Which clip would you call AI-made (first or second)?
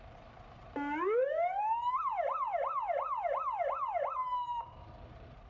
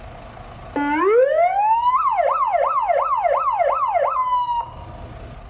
first